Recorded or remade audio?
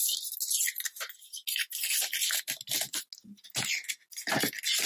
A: recorded